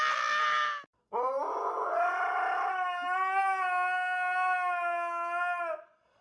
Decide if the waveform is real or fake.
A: real